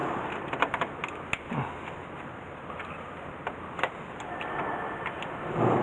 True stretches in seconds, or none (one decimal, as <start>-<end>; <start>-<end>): 0.0-5.8